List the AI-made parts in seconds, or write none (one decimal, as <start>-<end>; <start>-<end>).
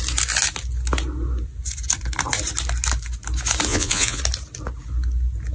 3.7-4.2